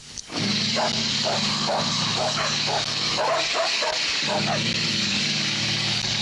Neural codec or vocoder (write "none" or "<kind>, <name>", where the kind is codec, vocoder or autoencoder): codec, DAC